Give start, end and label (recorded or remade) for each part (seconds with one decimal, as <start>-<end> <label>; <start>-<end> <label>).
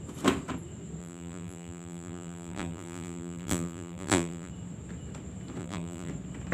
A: 0.0-1.0 recorded; 1.0-4.5 remade; 4.5-5.6 recorded; 5.6-6.1 remade; 6.1-6.5 recorded